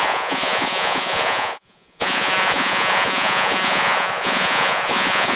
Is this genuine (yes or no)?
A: no